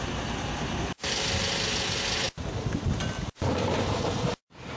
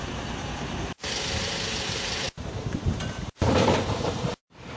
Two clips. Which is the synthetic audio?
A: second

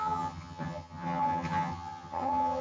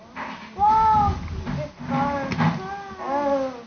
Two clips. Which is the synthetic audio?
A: first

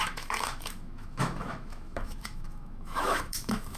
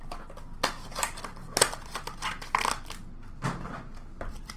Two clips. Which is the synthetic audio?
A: first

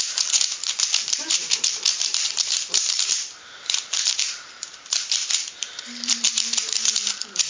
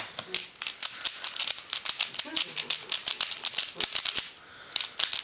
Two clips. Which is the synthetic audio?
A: first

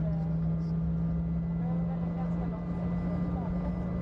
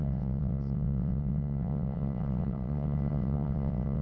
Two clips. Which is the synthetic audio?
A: second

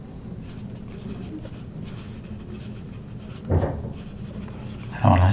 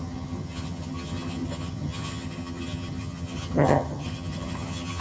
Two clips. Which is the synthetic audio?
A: second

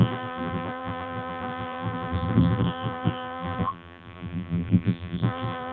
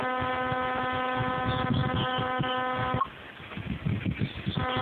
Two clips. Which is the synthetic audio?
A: first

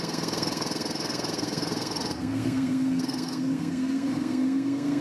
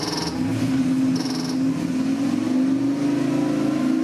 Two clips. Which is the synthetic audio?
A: first